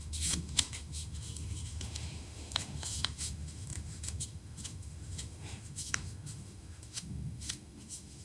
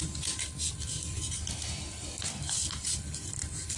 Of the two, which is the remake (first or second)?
first